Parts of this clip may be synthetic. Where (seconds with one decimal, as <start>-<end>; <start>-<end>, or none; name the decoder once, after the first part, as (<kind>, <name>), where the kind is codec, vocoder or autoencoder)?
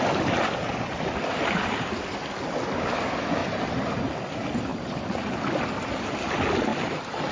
3.4-4.1 (vocoder, BigVGAN v2); 4.7-5.4; 6.7-7.3